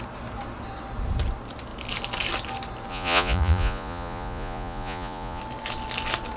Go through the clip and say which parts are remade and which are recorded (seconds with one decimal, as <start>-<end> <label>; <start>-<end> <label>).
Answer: 0.0-2.9 recorded; 2.9-5.4 remade; 5.4-6.4 recorded